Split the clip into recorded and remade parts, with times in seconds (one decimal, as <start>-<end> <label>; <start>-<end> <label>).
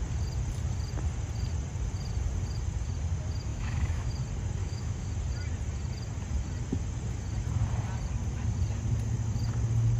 0.0-3.5 recorded; 3.5-4.1 remade; 4.1-4.6 recorded; 4.6-5.1 remade; 5.1-10.0 recorded